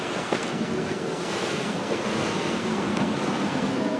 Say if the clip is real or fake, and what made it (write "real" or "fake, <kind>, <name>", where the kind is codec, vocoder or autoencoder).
fake, codec, SNAC